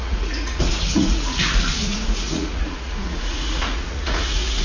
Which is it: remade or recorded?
remade